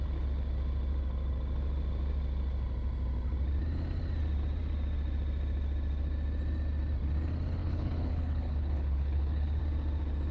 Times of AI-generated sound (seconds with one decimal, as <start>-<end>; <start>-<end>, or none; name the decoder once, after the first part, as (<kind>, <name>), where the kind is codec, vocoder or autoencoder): 7.6-9.6 (codec, HILCodec)